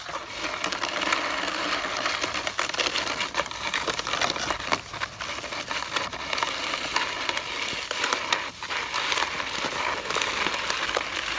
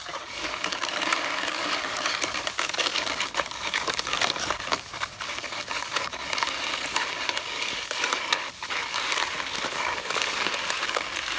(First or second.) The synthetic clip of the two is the second